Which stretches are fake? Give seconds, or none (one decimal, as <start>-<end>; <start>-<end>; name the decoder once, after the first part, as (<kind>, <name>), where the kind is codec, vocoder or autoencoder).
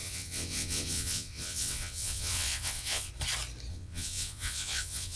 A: 0.0-3.1 (vocoder, WaveNeXt); 3.7-5.2